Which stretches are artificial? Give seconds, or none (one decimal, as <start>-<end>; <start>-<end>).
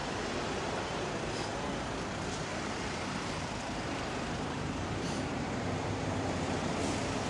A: 0.0-0.9; 2.5-6.7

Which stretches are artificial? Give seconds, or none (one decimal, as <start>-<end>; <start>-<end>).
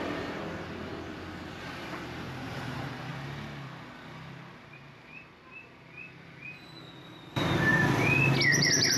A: 0.0-0.9; 1.6-3.1; 4.5-7.7; 8.6-9.0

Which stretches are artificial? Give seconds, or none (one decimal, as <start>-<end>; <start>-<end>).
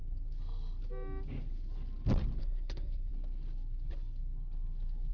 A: 2.4-3.1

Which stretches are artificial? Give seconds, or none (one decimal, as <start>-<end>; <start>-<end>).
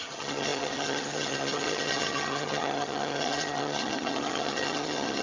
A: 0.0-5.2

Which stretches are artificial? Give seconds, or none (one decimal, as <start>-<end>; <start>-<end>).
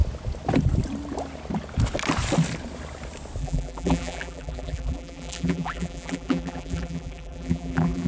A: 3.4-8.1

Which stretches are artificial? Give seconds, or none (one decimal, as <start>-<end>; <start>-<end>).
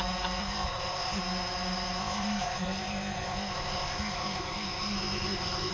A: 0.4-1.2; 2.0-5.7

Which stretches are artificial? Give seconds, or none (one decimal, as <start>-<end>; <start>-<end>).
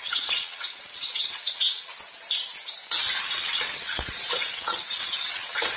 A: 0.0-1.9; 3.2-5.8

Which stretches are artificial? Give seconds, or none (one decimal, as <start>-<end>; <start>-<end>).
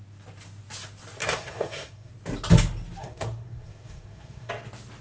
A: 1.2-2.1; 3.0-4.5